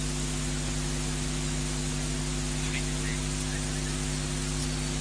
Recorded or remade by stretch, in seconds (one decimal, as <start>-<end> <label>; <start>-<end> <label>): 0.0-5.0 recorded